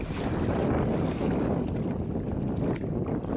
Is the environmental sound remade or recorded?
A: recorded